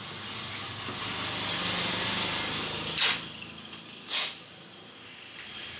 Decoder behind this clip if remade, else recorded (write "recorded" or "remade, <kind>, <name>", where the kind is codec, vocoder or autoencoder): recorded